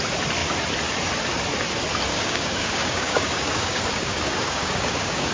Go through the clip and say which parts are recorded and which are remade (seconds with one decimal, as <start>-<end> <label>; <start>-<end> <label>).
0.0-2.1 recorded; 2.1-5.3 remade